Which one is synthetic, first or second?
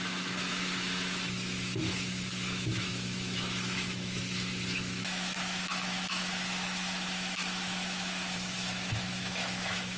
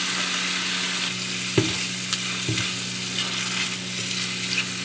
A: first